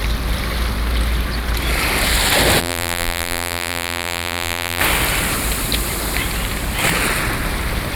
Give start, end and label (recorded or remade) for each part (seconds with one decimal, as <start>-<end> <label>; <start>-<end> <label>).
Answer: 0.0-2.6 recorded; 2.6-4.8 remade; 4.8-8.0 recorded